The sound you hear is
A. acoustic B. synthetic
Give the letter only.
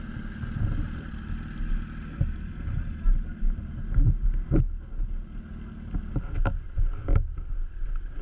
A